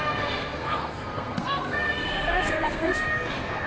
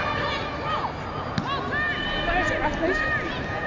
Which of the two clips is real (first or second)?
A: second